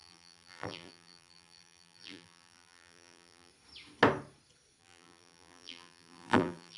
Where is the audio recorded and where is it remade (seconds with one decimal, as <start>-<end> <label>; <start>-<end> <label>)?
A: 0.0-3.5 remade; 3.5-4.8 recorded; 4.8-6.8 remade